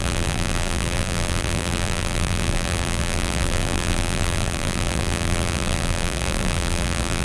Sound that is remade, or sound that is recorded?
remade